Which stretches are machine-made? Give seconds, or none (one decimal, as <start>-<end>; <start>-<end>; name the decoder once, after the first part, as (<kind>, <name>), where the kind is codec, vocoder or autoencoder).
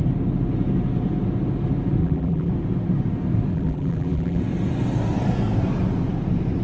2.0-2.5 (vocoder, BigVGAN v2); 3.5-4.4